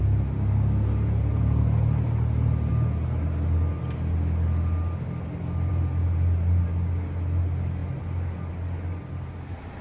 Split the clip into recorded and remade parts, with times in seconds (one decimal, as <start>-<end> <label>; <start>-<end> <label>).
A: 0.0-9.8 recorded